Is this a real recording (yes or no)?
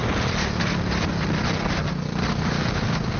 yes